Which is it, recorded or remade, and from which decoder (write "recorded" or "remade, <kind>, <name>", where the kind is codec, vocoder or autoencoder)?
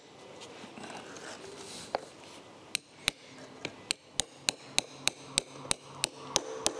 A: recorded